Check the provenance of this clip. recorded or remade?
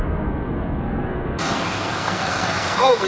remade